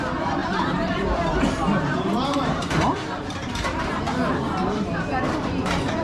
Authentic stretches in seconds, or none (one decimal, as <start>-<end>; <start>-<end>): 0.0-0.4; 4.0-4.6; 5.6-6.0